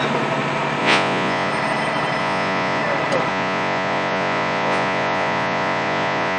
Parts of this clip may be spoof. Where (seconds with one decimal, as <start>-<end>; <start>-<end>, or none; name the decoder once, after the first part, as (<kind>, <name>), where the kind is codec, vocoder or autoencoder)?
0.8-1.5 (vocoder, Vocos); 2.2-2.8; 3.3-6.4